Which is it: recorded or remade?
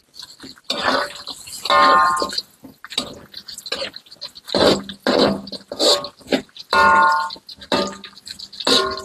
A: recorded